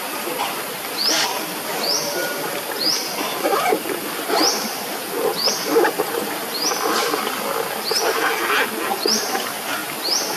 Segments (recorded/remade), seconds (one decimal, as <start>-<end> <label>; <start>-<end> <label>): 0.0-2.0 recorded; 2.0-3.6 remade; 3.6-10.4 recorded